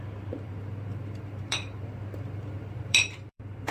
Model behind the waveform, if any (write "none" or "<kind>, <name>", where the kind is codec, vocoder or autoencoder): vocoder, BigVGAN v2